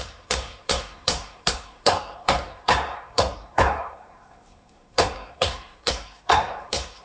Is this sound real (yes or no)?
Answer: no